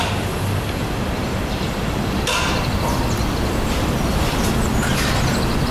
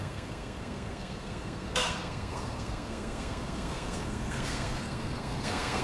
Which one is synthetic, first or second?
second